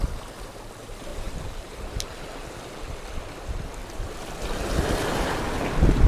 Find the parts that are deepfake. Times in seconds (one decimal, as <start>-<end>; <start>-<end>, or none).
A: 1.1-3.0